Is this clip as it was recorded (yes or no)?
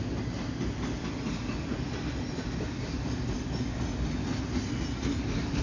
yes